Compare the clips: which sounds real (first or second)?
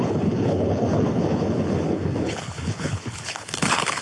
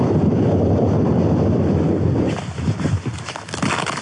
second